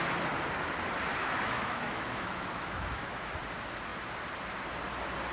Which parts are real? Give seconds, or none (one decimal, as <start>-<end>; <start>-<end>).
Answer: 0.0-1.2; 3.3-5.3